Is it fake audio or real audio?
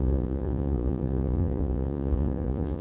fake